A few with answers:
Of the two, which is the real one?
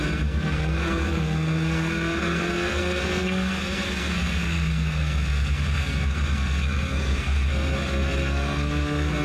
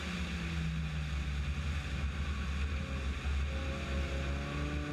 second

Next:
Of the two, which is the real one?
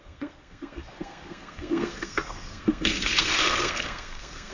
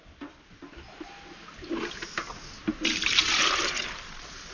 second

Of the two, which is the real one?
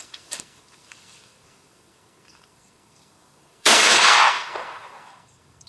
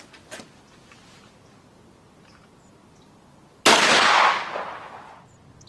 second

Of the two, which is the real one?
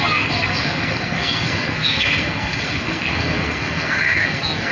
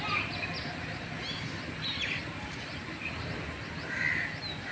second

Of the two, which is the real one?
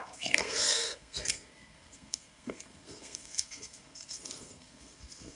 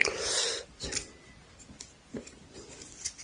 second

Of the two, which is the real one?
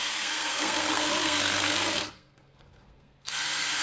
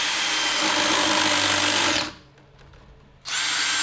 second